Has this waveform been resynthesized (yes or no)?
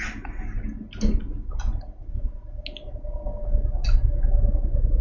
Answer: no